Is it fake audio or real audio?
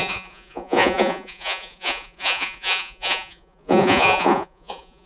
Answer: fake